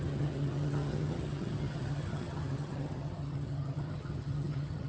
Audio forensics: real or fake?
fake